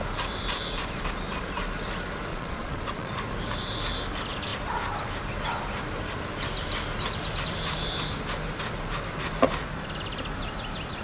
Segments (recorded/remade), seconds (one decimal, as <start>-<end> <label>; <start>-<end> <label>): 0.0-2.3 recorded; 2.3-3.1 remade; 3.1-11.0 recorded

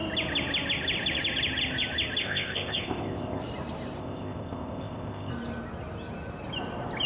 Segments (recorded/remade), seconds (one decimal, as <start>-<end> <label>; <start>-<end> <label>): 0.0-2.2 recorded; 2.2-3.4 remade; 3.4-4.0 recorded; 4.0-5.3 remade; 5.3-7.1 recorded